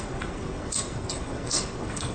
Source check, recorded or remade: remade